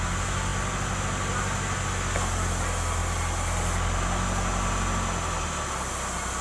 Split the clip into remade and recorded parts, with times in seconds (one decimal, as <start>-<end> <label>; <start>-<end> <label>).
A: 0.0-6.4 recorded